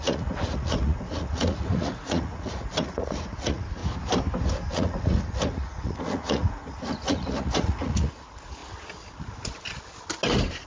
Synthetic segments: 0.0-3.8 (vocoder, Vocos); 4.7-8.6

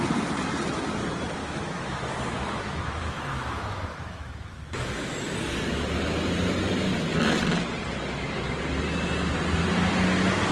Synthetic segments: 1.4-5.1 (autoencoder, DAC-VAE)

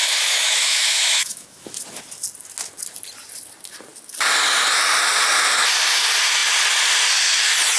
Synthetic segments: 0.0-1.7 (autoencoder, DAC-VAE)

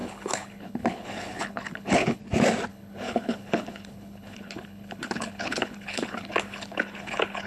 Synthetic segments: 0.0-2.2 (codec, HILCodec); 2.7-7.5

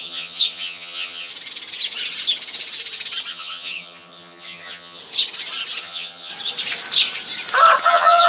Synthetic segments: 0.0-1.3 (vocoder, HiFi-GAN); 3.3-5.0; 5.8-6.3; 7.8-8.3